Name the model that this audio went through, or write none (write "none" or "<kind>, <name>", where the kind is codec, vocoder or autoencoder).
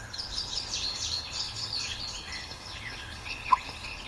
codec, HILCodec